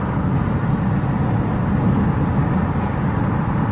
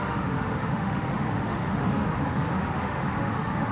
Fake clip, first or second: second